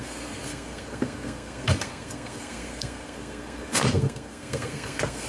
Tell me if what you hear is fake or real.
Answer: fake